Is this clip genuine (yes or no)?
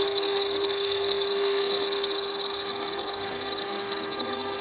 no